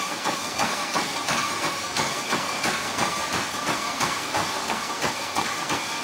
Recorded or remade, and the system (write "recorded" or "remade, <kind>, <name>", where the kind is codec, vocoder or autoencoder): remade, codec, SNAC